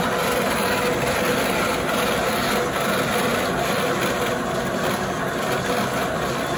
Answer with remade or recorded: recorded